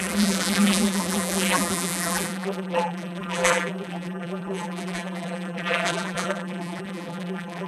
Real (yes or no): no